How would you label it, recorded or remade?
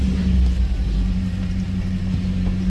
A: recorded